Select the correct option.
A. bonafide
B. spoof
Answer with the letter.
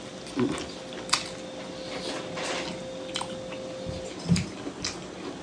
A